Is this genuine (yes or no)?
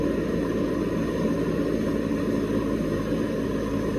yes